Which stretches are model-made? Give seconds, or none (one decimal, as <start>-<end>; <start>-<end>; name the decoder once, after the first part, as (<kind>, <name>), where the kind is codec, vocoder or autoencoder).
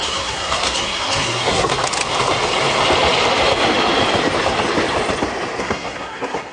0.0-1.7 (codec, SNAC); 5.6-6.5